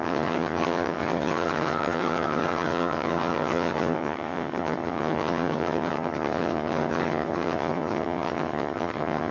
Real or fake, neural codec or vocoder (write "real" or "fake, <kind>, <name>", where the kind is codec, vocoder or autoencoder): fake, vocoder, HiFi-GAN